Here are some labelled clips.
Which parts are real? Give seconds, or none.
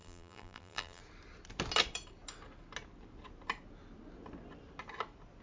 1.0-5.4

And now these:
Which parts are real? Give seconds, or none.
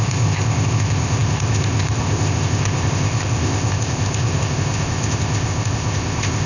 none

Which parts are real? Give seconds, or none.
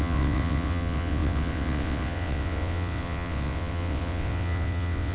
none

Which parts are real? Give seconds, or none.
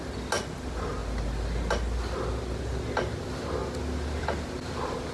0.0-5.1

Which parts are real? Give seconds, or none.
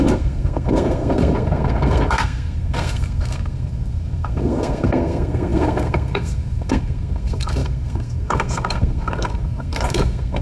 none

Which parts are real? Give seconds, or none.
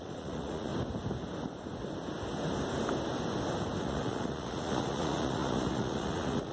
0.7-3.8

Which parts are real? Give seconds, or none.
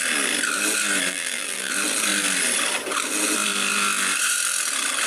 0.0-1.1; 1.7-5.1